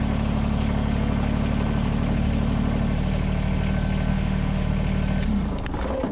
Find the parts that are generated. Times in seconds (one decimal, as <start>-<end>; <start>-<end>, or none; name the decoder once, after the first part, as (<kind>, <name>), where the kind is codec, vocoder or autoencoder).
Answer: 4.1-4.7 (autoencoder, DAC-VAE)